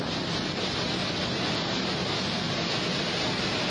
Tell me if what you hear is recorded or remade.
recorded